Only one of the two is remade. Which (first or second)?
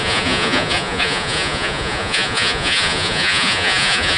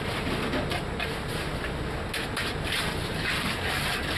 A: first